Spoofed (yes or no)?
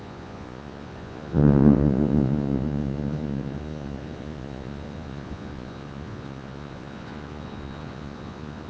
yes